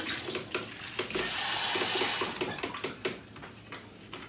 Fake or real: real